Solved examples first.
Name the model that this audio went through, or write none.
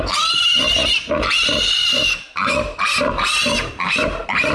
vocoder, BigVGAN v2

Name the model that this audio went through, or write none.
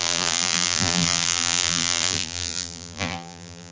vocoder, BigVGAN v2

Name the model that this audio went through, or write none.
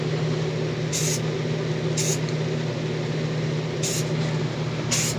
none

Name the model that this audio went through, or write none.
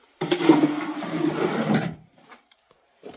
vocoder, BigVGAN v2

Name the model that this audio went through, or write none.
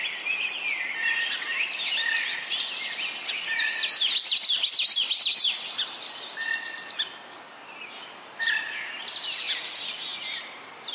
none